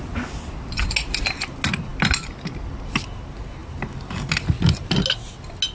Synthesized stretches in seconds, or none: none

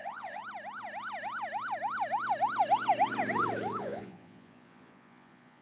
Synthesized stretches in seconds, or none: 0.0-0.4 (vocoder, Vocos); 3.8-5.6

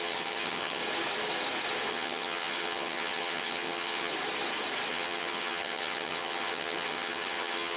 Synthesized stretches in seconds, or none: 0.0-0.8 (vocoder, HiFi-GAN); 1.9-4.1; 4.9-7.8

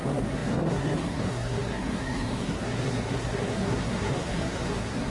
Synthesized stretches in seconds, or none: 0.0-5.1 (codec, SNAC)

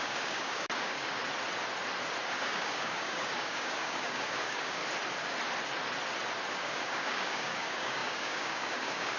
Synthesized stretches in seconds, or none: 0.0-1.2 (codec, DAC); 2.3-4.8; 6.5-9.2

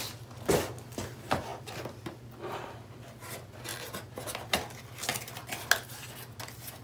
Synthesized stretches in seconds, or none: none

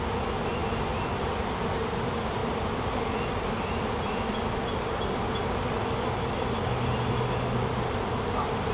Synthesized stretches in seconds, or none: 2.4-4.3 (vocoder, BigVGAN v2)

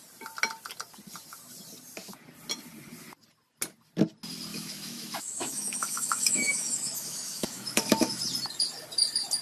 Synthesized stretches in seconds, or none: 4.5-8.2 (autoencoder, DAC-VAE)